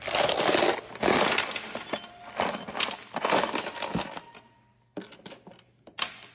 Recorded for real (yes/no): yes